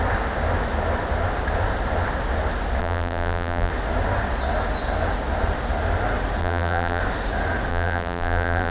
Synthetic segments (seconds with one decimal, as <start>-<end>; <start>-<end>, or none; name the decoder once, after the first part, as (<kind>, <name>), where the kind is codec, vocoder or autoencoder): 2.8-3.7 (vocoder, BigVGAN v2); 6.4-7.0; 7.7-8.7